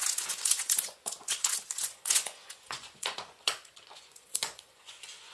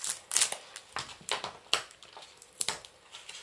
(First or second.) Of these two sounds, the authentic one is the second